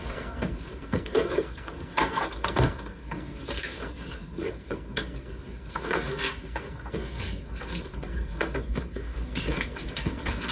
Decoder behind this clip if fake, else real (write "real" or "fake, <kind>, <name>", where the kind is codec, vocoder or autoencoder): fake, codec, SNAC